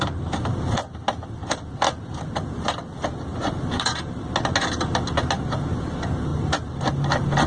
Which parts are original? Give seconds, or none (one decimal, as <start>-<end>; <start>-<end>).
0.0-3.3; 4.2-6.3; 6.9-7.5